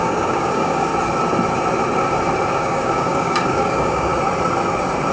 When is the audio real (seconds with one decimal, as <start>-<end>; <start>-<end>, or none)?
0.9-2.5; 4.1-5.1